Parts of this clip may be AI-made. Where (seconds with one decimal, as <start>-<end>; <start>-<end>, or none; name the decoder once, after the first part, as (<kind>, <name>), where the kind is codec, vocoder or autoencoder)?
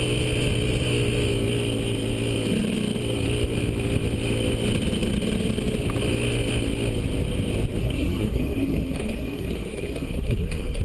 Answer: 7.8-10.8 (codec, SNAC)